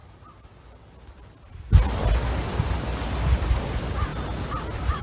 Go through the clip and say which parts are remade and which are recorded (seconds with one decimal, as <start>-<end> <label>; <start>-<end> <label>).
0.0-5.0 recorded